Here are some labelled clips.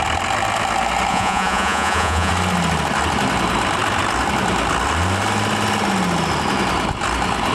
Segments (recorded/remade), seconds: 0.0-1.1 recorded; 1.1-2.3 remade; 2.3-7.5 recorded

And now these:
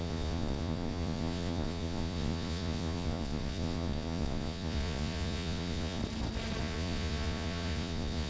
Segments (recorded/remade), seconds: 0.0-6.0 remade; 6.0-6.6 recorded; 6.6-8.3 remade

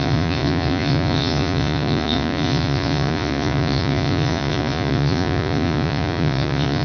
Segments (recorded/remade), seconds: 0.0-6.8 remade

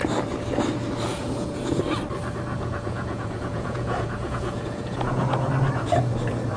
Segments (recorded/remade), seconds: 0.0-1.1 recorded; 1.1-1.8 remade; 1.8-2.5 recorded; 2.5-5.5 remade; 5.5-6.6 recorded